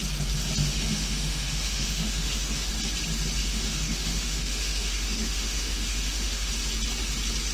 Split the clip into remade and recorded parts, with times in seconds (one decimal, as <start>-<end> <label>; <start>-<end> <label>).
0.0-0.6 recorded; 0.6-2.7 remade; 2.7-3.4 recorded; 3.4-6.5 remade; 6.5-7.5 recorded